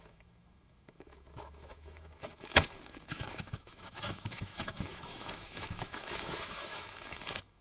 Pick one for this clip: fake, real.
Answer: fake